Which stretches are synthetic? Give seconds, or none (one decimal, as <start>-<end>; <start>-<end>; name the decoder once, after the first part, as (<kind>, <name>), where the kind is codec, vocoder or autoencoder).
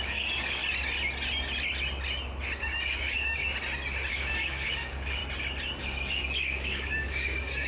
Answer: 0.0-0.6 (codec, DAC); 2.6-3.4; 4.1-5.2; 5.8-7.7